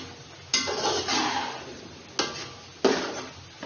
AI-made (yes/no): no